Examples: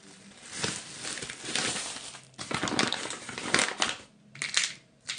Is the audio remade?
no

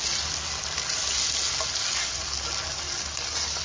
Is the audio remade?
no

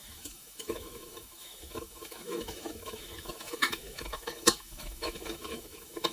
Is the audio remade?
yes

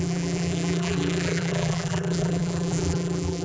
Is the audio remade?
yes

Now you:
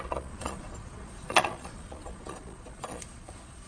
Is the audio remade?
yes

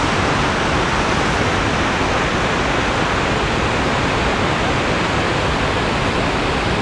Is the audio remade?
no